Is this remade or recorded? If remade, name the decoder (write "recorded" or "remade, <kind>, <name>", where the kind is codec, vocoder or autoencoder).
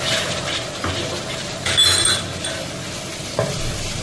recorded